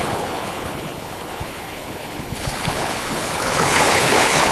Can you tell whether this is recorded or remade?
remade